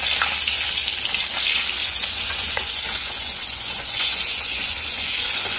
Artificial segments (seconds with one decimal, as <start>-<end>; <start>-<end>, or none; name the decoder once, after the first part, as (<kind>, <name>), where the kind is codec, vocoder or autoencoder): 1.8-5.6 (vocoder, Vocos)